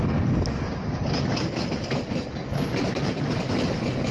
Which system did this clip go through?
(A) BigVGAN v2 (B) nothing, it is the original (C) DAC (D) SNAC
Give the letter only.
B